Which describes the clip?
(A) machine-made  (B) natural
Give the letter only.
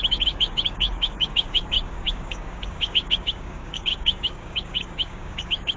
A